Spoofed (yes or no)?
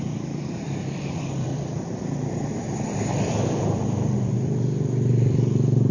yes